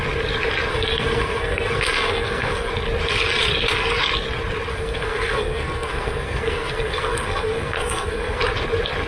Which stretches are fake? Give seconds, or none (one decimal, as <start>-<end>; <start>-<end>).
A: 0.7-2.7; 4.7-8.4